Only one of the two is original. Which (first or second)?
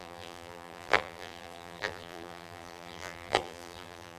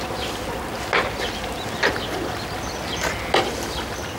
second